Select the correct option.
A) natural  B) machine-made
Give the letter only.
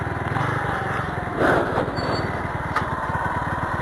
A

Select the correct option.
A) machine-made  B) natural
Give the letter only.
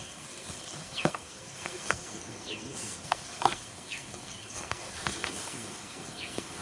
A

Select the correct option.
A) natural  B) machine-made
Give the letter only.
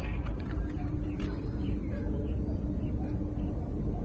A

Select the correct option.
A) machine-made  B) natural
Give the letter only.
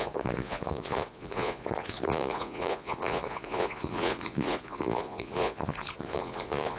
A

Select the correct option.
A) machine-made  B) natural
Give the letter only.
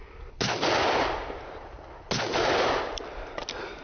B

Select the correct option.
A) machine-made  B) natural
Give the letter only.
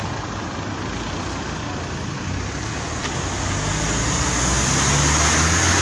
B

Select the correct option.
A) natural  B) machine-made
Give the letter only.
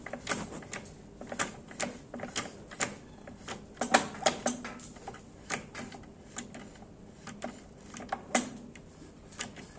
A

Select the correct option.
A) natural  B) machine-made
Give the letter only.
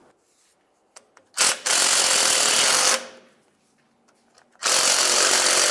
A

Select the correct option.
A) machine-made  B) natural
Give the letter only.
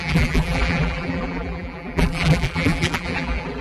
A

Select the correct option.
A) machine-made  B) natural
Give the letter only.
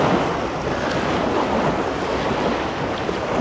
B